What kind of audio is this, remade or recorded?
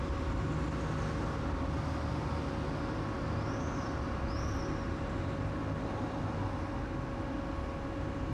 recorded